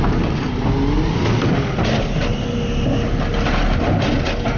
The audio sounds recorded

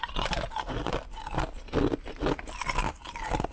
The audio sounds recorded